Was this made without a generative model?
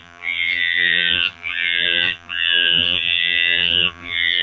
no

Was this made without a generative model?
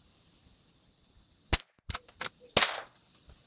yes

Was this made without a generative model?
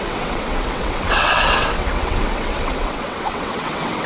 no